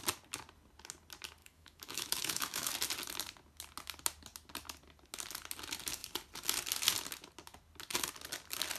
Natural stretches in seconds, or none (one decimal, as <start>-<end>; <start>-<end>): 0.0-1.4; 2.7-8.8